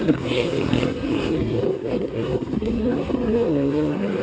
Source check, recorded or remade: remade